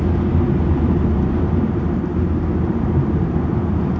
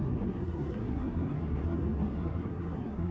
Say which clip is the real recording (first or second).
first